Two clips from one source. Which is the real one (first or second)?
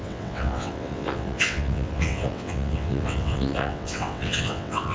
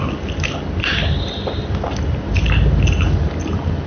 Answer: second